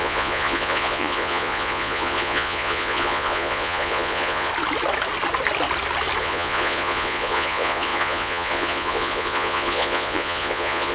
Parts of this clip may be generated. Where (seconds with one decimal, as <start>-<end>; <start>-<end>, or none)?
0.0-4.5; 6.2-10.9